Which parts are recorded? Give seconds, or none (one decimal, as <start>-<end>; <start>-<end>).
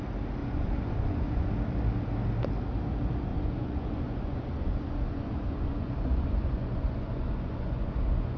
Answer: 0.0-0.4; 1.5-3.3